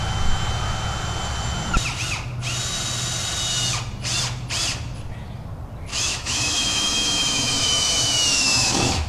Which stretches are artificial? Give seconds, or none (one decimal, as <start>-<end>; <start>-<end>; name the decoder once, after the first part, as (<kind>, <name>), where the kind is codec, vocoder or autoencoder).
5.9-9.1 (autoencoder, DAC-VAE)